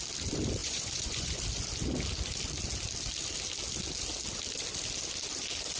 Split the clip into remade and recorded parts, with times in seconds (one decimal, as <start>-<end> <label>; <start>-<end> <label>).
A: 0.0-0.6 recorded; 0.6-1.4 remade; 1.4-5.8 recorded